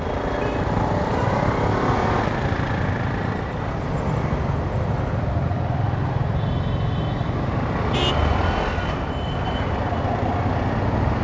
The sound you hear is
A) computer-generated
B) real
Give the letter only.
B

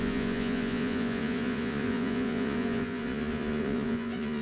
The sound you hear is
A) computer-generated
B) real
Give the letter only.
A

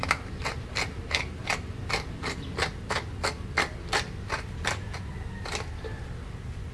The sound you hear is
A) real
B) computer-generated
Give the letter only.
A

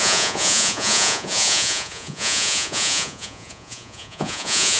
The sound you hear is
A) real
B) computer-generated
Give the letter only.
B